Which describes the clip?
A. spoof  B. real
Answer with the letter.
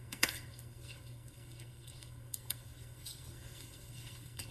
A